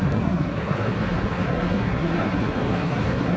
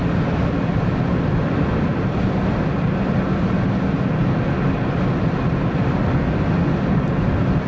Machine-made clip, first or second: first